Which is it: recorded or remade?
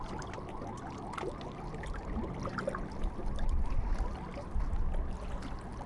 recorded